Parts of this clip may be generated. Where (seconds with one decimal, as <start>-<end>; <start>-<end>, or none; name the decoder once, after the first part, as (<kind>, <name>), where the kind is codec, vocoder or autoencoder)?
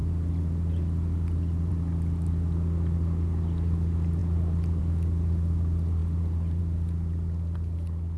none